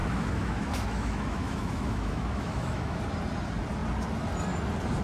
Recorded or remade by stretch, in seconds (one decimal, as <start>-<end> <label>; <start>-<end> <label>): 0.0-3.0 remade; 3.0-5.0 recorded